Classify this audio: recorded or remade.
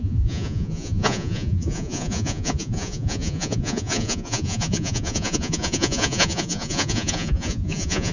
remade